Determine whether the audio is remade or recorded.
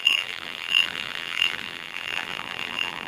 remade